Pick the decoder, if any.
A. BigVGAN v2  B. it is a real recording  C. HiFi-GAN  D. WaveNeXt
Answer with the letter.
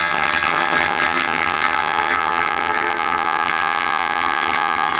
C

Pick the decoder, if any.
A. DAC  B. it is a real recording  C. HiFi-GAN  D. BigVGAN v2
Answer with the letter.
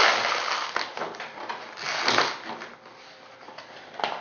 B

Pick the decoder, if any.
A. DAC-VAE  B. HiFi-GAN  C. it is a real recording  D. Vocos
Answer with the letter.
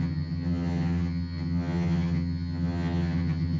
B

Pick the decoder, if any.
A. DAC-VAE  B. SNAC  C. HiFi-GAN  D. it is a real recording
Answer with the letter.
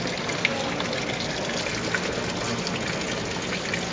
D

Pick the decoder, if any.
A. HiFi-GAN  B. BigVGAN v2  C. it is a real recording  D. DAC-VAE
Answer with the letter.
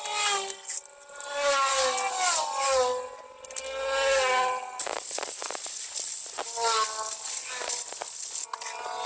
C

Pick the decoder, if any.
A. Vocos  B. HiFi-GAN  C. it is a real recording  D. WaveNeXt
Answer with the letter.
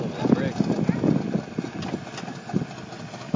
C